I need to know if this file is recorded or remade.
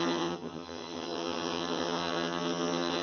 remade